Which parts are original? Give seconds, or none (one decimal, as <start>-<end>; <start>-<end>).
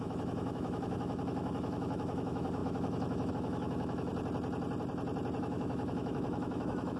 4.1-5.4